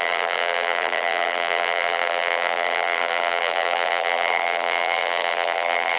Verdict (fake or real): fake